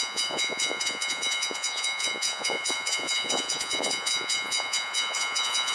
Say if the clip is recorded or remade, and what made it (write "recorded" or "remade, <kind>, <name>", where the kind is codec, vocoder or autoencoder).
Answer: remade, vocoder, Vocos